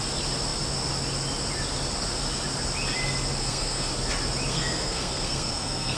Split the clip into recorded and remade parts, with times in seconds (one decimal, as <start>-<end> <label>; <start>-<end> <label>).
0.0-3.4 recorded; 3.4-3.9 remade; 3.9-4.5 recorded; 4.5-6.0 remade